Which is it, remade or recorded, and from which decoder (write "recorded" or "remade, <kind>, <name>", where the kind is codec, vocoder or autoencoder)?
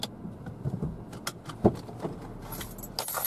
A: recorded